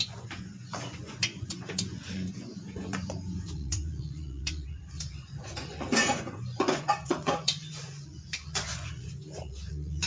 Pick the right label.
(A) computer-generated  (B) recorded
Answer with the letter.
A